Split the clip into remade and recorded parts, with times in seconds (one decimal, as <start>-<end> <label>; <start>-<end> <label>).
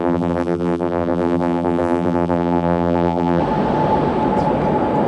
0.0-3.4 remade; 3.4-5.1 recorded